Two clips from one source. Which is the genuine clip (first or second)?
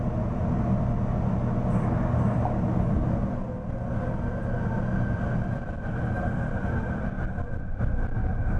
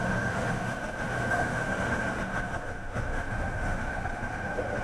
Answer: first